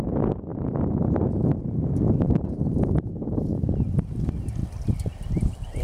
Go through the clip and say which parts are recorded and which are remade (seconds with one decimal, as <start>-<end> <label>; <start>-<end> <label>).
0.0-0.5 recorded; 0.5-3.0 remade; 3.0-5.8 recorded